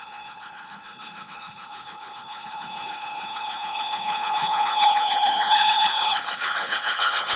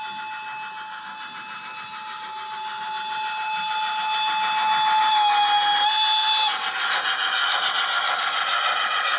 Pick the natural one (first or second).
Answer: second